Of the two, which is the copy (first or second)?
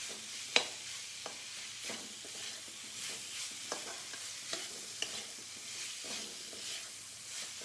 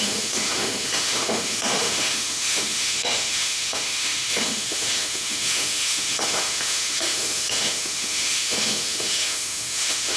second